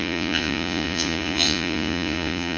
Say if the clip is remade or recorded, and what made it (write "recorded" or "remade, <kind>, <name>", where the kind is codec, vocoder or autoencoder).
remade, vocoder, Vocos